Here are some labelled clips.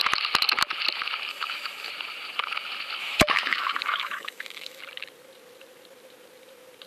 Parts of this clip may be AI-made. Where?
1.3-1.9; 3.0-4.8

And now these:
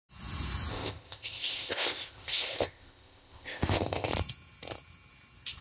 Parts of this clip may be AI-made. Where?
0.7-4.1

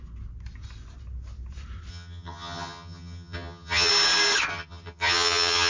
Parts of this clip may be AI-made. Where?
1.9-3.9; 4.5-5.7

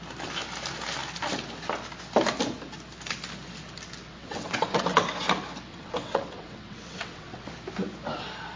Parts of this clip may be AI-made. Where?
4.1-4.8; 5.7-7.5